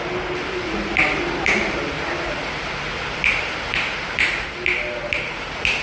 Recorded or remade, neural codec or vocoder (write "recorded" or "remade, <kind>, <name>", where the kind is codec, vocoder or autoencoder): recorded